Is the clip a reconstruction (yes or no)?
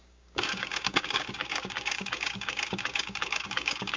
yes